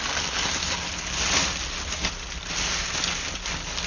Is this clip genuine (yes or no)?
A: yes